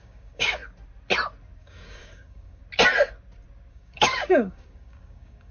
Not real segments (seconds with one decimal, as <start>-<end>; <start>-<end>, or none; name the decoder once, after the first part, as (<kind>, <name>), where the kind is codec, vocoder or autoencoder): 0.0-0.6 (codec, DAC); 1.6-2.6; 3.7-5.5

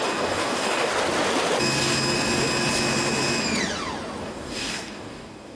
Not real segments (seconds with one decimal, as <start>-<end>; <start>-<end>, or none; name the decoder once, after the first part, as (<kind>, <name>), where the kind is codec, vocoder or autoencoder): 0.0-0.9 (codec, DAC); 4.2-5.6